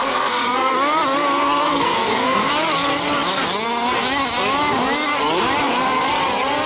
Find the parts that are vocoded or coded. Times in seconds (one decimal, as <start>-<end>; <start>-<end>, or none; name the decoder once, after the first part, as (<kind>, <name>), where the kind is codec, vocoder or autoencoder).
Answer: 0.0-0.7 (codec, SNAC); 1.7-2.5